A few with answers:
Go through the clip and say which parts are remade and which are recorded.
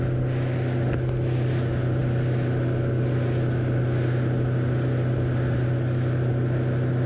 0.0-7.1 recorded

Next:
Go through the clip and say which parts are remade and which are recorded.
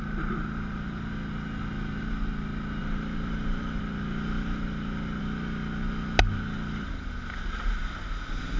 0.0-2.8 recorded; 2.8-3.8 remade; 3.8-8.6 recorded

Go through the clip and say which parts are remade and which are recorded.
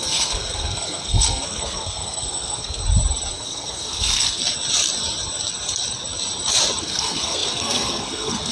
0.0-2.8 remade; 2.8-3.3 recorded; 3.3-4.4 remade; 4.4-6.8 recorded; 6.8-8.5 remade